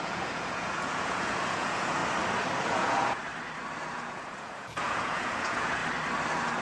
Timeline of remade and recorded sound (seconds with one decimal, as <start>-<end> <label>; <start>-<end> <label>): 0.0-2.0 remade; 2.0-2.7 recorded; 2.7-3.2 remade; 3.2-3.9 recorded; 3.9-5.8 remade; 5.8-6.6 recorded